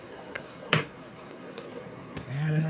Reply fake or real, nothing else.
fake